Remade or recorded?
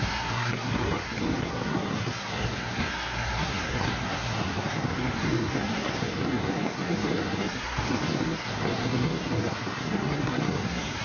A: remade